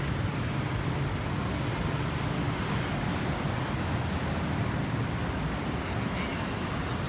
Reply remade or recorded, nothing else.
recorded